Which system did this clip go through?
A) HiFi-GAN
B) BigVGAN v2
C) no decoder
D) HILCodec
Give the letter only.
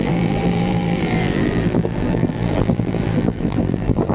B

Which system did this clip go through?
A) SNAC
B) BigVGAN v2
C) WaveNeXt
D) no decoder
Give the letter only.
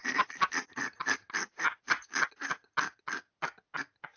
D